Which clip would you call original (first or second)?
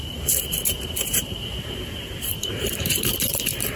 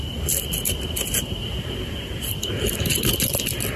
second